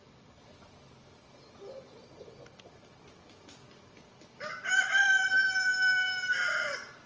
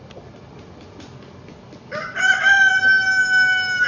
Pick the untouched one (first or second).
second